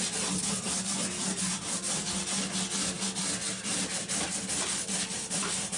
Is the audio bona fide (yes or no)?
yes